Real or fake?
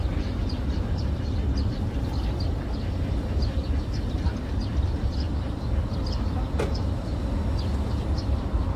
real